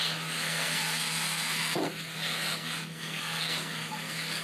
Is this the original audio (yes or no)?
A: no